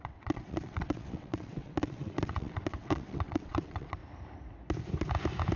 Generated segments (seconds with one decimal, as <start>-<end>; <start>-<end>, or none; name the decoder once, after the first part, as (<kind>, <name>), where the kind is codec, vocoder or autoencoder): 0.0-4.0 (vocoder, WaveNeXt)